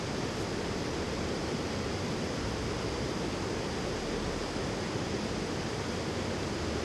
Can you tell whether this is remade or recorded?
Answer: recorded